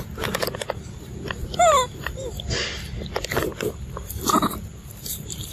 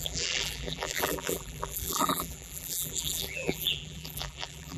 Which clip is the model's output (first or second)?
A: second